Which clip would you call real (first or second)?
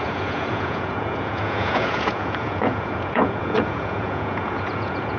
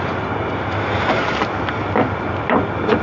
second